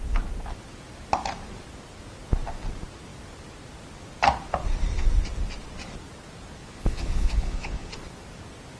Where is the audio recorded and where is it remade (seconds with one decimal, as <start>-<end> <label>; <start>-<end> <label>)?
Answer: 0.0-6.6 recorded; 6.6-7.9 remade; 7.9-8.8 recorded